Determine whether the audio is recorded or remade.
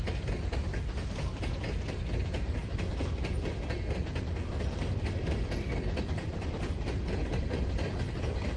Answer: recorded